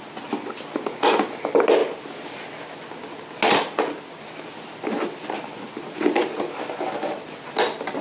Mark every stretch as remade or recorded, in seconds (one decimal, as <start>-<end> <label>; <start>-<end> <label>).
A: 0.0-8.0 recorded